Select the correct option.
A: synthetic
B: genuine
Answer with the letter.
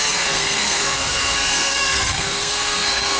A